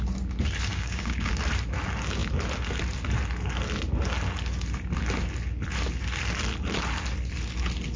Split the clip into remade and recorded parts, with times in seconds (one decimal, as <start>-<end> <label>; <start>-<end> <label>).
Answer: 0.0-0.7 recorded; 0.7-1.3 remade; 1.3-8.0 recorded